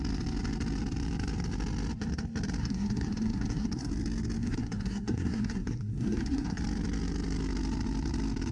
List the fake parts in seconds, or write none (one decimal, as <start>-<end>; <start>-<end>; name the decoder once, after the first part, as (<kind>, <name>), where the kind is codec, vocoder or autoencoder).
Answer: 2.6-3.9 (codec, SNAC); 4.4-6.6